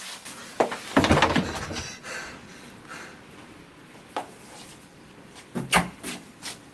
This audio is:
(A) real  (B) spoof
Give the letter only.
A